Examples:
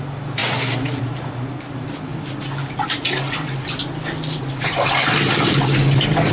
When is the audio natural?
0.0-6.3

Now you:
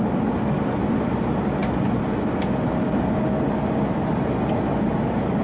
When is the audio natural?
0.0-5.4

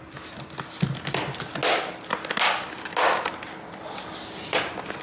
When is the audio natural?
0.0-5.0

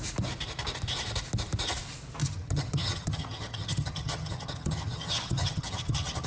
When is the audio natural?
0.0-2.2

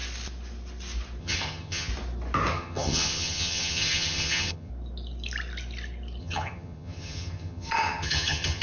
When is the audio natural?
0.0-1.2; 1.9-2.5; 4.7-6.2

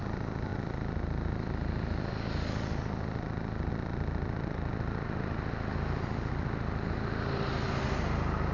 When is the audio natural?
0.0-8.5

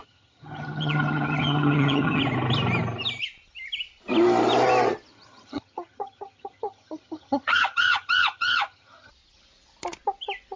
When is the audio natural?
2.2-5.1; 9.1-10.6